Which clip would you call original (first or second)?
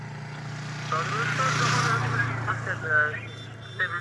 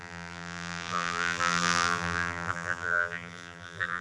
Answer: first